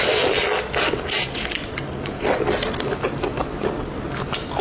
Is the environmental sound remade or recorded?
recorded